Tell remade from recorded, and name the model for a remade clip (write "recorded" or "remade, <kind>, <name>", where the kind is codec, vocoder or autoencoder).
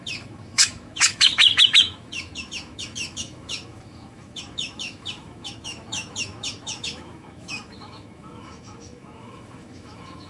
remade, autoencoder, DAC-VAE